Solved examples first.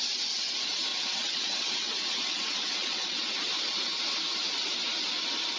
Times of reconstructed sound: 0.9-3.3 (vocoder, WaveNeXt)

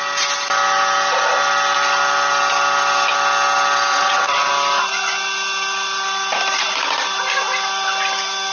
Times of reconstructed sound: 3.9-4.5 (vocoder, WaveNeXt)

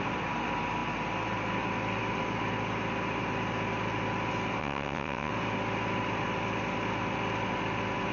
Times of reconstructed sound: 4.6-5.3 (vocoder, WaveNeXt)